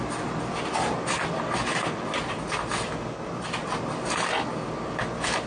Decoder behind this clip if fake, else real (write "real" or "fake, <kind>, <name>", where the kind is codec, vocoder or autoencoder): real